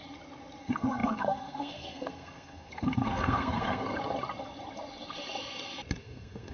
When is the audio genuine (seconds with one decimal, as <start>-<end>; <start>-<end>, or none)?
0.0-0.6; 3.9-6.0